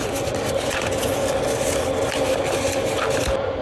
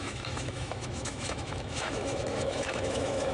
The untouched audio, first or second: first